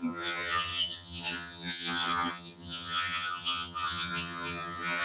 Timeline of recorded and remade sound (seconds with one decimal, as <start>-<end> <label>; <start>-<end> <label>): 0.0-5.0 remade